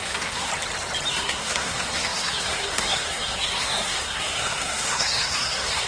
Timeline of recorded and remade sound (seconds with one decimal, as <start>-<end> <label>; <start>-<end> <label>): 0.0-0.5 remade; 0.5-1.1 recorded; 1.1-5.9 remade